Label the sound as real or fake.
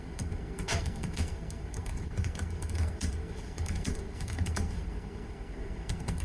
fake